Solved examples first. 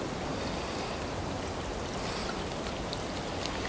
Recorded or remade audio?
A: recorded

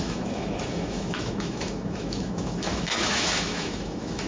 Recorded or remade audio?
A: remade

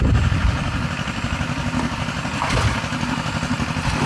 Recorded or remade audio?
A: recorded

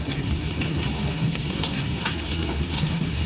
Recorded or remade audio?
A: remade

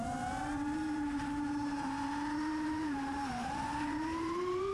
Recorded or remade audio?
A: remade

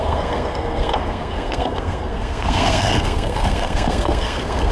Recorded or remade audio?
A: remade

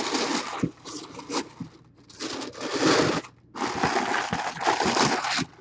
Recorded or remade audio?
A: recorded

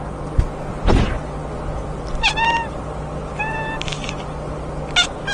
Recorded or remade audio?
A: recorded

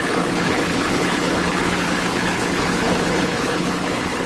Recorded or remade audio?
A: remade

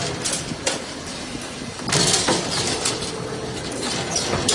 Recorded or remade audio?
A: recorded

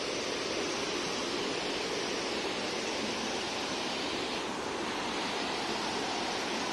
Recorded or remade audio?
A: remade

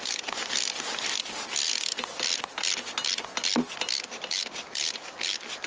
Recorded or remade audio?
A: recorded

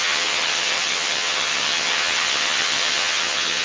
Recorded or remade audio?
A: remade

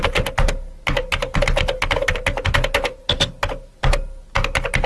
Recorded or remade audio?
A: recorded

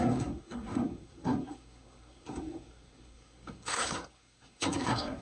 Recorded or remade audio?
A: remade